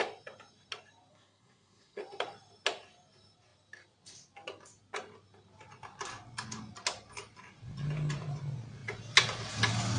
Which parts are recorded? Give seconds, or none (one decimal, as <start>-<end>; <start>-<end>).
0.0-1.1; 2.0-10.0